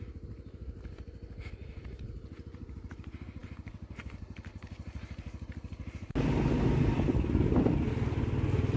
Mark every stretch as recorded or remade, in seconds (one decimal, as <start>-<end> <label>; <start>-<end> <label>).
0.0-8.8 recorded